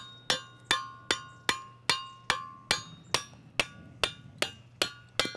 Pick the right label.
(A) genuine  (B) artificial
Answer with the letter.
A